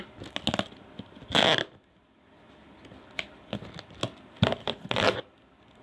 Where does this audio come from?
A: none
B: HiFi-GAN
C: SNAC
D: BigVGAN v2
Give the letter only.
A